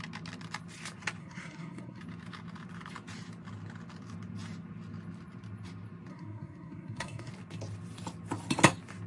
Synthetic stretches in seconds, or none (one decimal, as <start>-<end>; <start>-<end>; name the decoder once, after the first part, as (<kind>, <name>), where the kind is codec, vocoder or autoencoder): 1.2-2.0 (codec, SNAC); 6.1-7.3